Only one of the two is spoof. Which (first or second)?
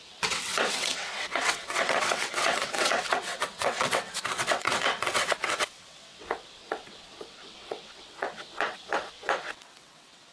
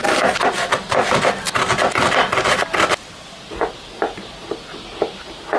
first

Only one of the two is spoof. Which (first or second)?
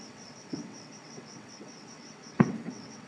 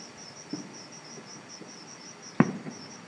first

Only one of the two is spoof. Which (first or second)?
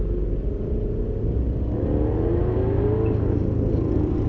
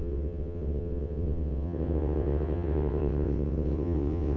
second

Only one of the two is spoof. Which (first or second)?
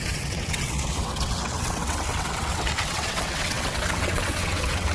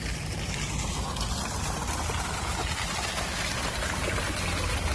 first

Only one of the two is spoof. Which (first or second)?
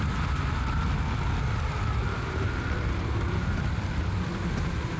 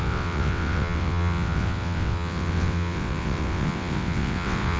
second